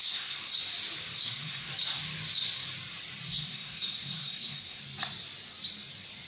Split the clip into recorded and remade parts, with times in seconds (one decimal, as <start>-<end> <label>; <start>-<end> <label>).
0.0-0.4 remade; 0.4-1.2 recorded; 1.2-1.7 remade; 1.7-3.3 recorded; 3.3-4.8 remade; 4.8-6.3 recorded